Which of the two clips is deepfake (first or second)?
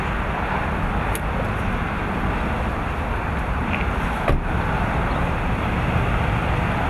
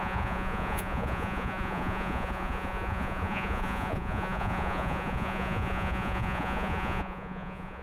second